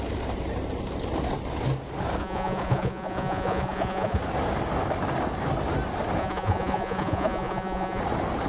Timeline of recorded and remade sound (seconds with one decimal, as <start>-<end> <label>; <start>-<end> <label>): 0.0-2.2 recorded; 2.2-4.2 remade; 4.2-6.2 recorded; 6.2-8.0 remade; 8.0-8.5 recorded